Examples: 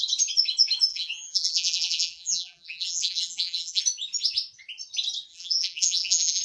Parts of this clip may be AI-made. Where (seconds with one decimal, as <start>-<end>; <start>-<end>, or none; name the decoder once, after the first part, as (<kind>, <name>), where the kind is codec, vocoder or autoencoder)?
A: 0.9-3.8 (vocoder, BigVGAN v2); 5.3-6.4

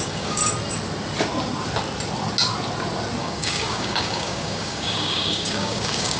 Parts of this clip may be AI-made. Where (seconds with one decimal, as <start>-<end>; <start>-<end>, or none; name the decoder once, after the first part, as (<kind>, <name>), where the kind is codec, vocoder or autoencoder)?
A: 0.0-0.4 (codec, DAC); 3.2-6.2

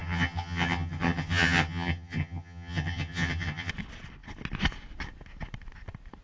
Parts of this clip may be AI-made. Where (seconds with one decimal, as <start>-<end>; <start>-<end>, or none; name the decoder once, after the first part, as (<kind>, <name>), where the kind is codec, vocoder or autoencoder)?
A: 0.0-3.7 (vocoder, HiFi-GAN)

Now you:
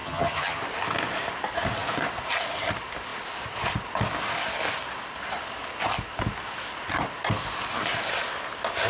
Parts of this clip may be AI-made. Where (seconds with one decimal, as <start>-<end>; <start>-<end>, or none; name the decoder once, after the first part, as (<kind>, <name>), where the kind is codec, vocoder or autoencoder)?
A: 0.0-0.6 (vocoder, HiFi-GAN)

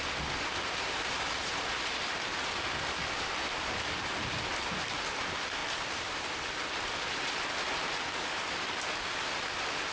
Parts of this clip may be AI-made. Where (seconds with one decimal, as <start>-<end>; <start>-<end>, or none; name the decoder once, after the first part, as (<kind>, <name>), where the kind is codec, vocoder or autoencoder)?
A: none